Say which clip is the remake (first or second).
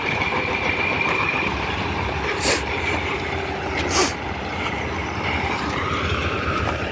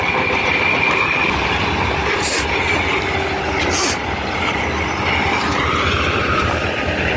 first